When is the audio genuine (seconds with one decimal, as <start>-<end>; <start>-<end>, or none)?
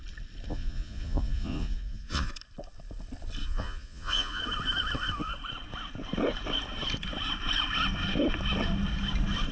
0.0-0.5; 2.3-3.4; 4.4-9.5